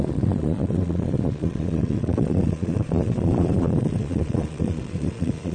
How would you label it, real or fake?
fake